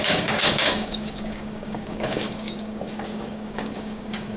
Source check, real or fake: fake